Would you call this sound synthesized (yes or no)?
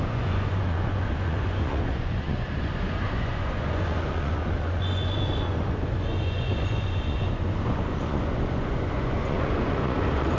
yes